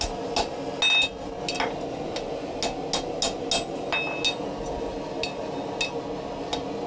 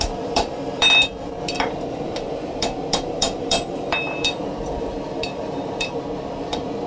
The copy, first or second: second